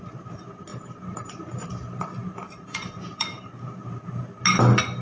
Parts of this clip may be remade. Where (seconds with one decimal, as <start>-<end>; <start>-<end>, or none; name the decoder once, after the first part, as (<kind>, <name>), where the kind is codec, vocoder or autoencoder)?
0.7-1.4 (vocoder, BigVGAN v2); 2.2-4.2